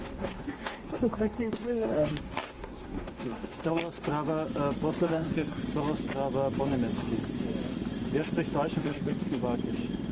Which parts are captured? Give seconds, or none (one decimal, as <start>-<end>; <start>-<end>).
3.8-5.0; 5.6-8.8; 9.4-10.1